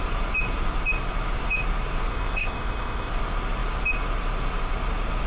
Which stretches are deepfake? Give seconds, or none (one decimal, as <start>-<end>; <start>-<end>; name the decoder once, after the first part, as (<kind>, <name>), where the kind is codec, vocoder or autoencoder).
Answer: 2.1-3.1 (codec, ZipCodec)